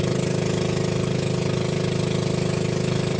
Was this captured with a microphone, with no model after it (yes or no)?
yes